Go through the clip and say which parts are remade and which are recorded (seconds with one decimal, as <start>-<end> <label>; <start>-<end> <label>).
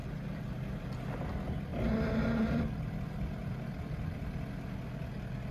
0.0-0.8 remade; 0.8-1.7 recorded; 1.7-2.9 remade; 2.9-3.4 recorded; 3.4-4.3 remade; 4.3-5.5 recorded